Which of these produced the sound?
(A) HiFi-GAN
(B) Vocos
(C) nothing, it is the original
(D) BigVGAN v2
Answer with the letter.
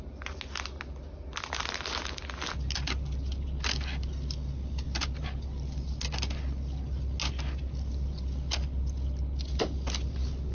C